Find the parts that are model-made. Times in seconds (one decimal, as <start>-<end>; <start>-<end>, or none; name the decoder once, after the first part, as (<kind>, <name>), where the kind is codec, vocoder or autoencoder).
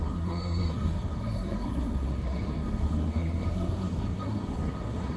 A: 0.0-5.2 (codec, SNAC)